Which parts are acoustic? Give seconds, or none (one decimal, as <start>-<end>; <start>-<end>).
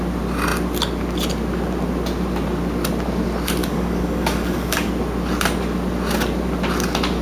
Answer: 0.0-3.6; 4.9-7.2